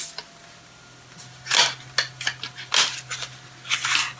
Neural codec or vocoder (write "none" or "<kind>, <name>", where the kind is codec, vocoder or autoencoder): none